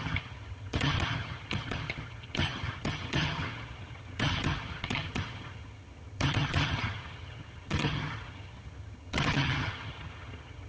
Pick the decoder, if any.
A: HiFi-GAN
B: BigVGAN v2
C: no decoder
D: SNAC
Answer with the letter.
A